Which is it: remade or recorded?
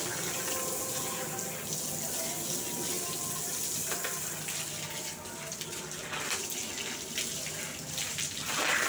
recorded